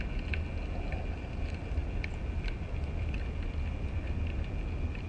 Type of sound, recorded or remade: recorded